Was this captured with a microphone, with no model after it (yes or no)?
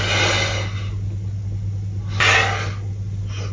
yes